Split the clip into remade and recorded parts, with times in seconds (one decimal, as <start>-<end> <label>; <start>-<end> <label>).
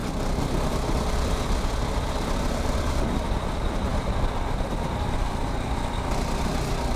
0.0-3.5 remade; 3.5-3.9 recorded; 3.9-5.4 remade; 5.4-7.0 recorded